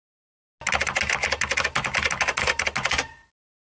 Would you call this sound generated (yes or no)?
no